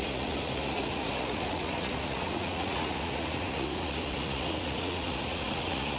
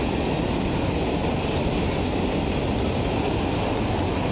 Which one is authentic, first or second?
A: second